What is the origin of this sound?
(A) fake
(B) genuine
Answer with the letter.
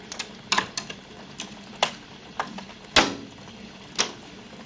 B